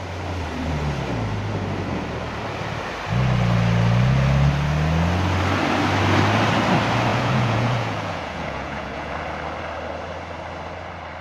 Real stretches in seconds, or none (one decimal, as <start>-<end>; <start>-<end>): 0.0-7.1; 9.2-11.2